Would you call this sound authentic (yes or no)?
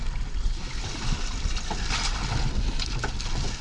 yes